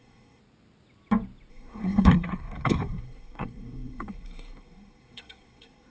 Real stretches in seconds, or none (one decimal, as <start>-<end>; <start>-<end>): 0.4-1.5